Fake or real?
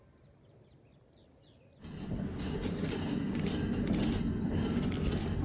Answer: real